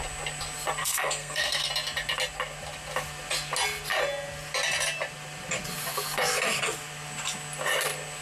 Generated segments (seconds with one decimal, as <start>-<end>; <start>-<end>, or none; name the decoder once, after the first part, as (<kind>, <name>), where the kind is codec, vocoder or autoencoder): 0.8-1.7 (codec, SNAC)